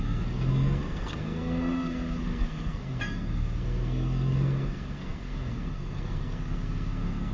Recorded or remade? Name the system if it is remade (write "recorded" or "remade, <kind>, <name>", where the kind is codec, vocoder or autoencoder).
remade, codec, SNAC